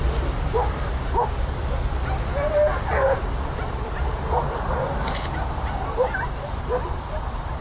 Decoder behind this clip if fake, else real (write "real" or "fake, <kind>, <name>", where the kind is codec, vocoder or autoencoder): real